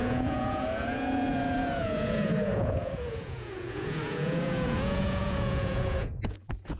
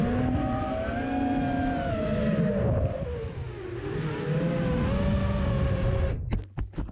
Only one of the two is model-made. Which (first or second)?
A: first